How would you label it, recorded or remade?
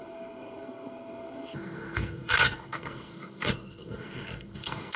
remade